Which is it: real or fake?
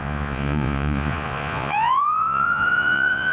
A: fake